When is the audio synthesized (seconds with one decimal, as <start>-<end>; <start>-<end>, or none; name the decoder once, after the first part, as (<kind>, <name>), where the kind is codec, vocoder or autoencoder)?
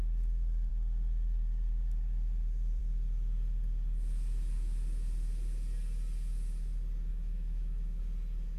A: 7.1-8.0 (autoencoder, DAC-VAE)